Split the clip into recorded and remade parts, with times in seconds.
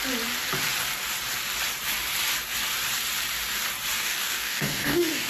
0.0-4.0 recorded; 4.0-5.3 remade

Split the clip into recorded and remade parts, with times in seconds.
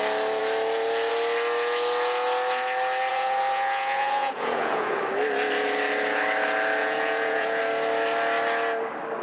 0.0-3.1 recorded; 3.1-5.0 remade; 5.0-6.8 recorded; 6.8-7.6 remade; 7.6-9.2 recorded